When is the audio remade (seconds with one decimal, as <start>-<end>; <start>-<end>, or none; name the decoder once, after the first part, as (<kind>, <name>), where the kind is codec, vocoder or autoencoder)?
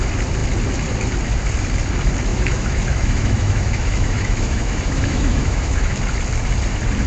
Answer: 2.3-6.0 (autoencoder, DAC-VAE)